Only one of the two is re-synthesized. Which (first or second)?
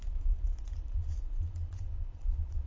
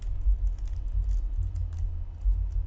first